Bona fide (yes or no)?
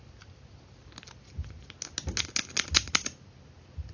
yes